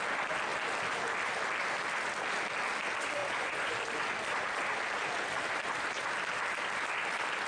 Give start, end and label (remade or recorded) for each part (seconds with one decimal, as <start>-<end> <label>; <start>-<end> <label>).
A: 0.0-3.2 recorded; 3.2-3.7 remade; 3.7-7.5 recorded